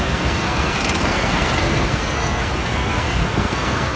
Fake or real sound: fake